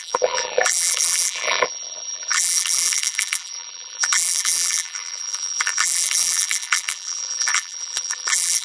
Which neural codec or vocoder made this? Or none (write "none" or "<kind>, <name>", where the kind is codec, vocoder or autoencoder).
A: vocoder, BigVGAN v2